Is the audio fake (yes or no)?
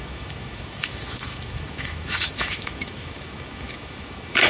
yes